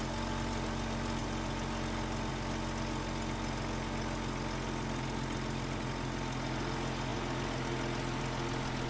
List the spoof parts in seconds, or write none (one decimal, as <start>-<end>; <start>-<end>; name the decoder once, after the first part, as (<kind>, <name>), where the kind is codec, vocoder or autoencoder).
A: none